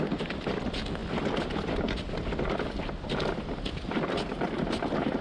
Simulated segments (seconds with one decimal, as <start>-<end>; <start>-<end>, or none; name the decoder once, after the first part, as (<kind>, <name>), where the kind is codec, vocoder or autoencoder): none